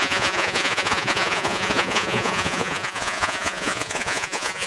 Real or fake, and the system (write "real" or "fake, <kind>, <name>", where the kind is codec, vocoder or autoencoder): fake, vocoder, Vocos